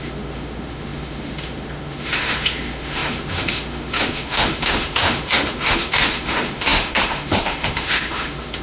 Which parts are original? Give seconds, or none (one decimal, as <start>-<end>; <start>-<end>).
none

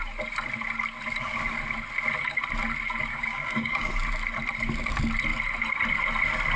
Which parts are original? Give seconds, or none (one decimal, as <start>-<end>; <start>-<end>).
0.0-3.1; 3.9-6.6

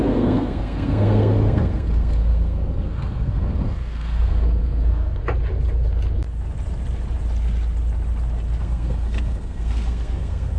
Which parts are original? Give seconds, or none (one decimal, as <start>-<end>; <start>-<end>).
5.2-8.6

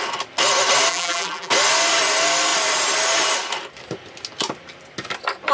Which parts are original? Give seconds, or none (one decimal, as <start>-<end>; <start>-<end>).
0.0-0.9; 1.5-5.5

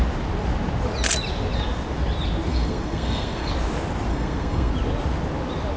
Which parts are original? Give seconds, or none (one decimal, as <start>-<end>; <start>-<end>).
0.0-2.5; 3.5-4.1; 4.7-5.8